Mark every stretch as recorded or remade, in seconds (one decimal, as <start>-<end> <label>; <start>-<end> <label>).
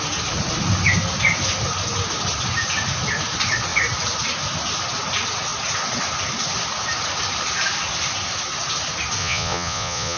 0.0-9.2 recorded; 9.2-10.2 remade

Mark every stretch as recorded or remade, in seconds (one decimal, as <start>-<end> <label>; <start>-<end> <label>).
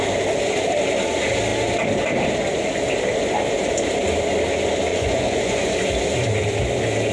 0.0-4.9 recorded; 4.9-5.7 remade; 5.7-7.1 recorded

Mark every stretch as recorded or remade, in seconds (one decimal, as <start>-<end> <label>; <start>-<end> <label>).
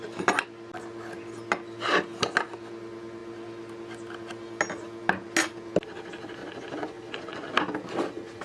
0.0-6.4 recorded; 6.4-7.5 remade; 7.5-8.4 recorded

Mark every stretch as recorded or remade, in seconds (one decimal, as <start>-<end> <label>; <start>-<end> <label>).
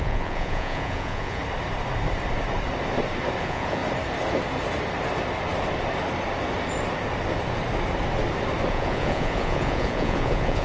0.0-1.4 remade; 1.4-3.4 recorded; 3.4-3.8 remade; 3.8-8.7 recorded; 8.7-10.6 remade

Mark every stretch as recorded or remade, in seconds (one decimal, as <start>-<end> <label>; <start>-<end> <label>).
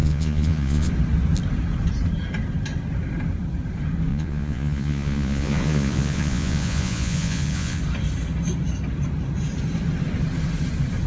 0.0-0.9 remade; 0.9-4.1 recorded; 4.1-7.8 remade; 7.8-11.1 recorded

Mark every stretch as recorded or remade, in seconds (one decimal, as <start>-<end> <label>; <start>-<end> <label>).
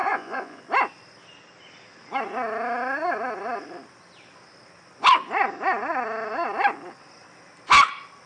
0.0-0.6 remade; 0.6-8.3 recorded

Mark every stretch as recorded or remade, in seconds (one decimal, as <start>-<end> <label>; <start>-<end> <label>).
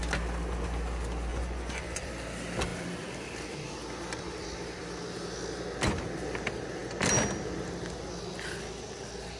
0.0-1.3 recorded; 1.3-2.1 remade; 2.1-9.4 recorded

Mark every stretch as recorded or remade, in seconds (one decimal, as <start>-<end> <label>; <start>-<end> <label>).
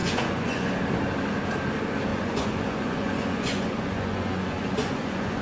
0.0-0.7 remade; 0.7-2.1 recorded; 2.1-5.4 remade